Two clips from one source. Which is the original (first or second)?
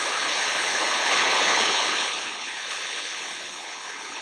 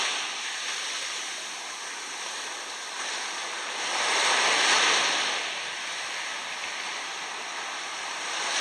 second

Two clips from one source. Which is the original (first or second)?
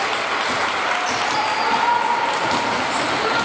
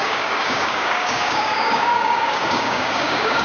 first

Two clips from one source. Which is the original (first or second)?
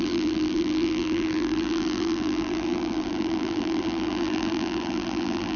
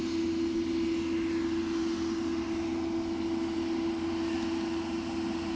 second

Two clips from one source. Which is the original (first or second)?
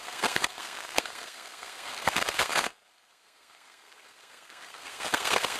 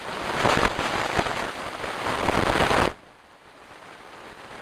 second